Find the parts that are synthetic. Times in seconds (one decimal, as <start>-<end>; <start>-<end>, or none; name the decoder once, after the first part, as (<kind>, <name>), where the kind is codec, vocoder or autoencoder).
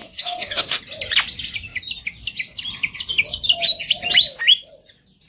0.0-0.8 (codec, DAC)